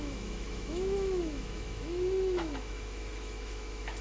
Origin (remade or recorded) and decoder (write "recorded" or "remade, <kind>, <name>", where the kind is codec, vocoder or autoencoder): remade, autoencoder, DAC-VAE